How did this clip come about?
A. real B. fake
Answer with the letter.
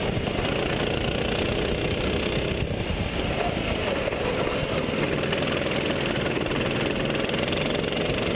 A